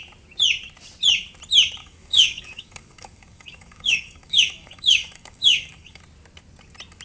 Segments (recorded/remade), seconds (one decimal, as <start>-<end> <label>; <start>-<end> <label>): 0.0-1.8 recorded; 1.8-6.0 remade; 6.0-7.0 recorded